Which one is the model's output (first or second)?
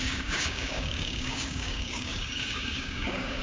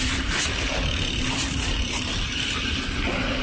first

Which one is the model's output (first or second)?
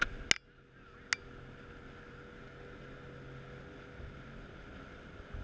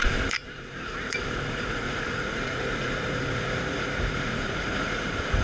second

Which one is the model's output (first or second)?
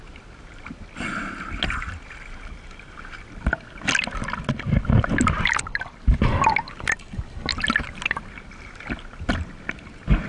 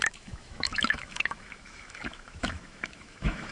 second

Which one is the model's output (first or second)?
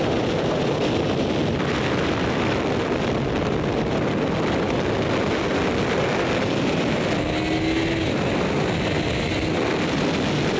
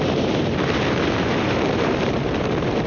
second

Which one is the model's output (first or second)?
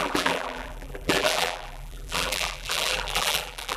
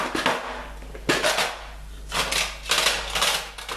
first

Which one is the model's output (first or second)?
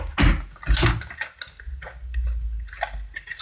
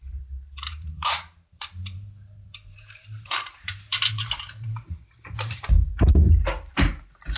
second